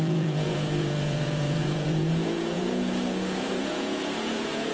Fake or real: fake